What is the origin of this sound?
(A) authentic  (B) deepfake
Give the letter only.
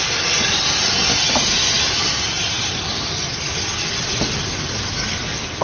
A